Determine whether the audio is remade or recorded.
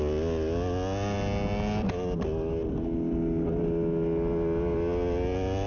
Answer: recorded